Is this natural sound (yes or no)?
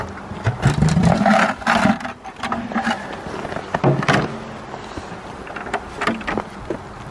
yes